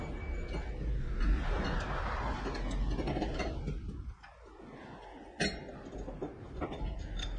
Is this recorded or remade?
recorded